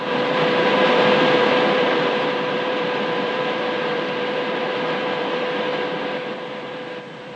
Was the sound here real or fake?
fake